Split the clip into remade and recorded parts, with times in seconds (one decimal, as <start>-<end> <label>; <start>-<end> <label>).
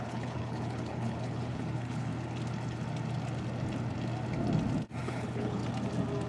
0.0-2.1 remade; 2.1-5.0 recorded; 5.0-5.6 remade; 5.6-6.3 recorded